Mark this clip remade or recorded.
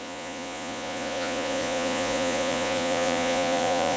remade